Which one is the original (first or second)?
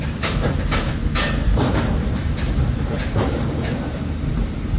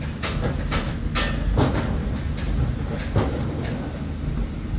second